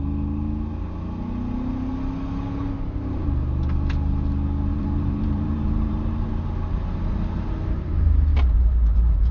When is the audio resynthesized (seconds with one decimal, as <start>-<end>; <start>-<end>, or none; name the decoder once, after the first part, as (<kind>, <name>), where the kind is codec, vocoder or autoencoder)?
4.7-6.3 (vocoder, BigVGAN v2); 8.3-9.3